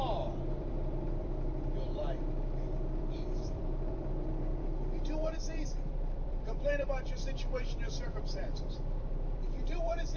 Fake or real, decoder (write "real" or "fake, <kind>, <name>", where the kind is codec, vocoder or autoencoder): fake, vocoder, BigVGAN v2